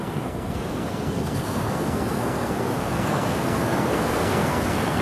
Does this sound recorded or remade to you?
remade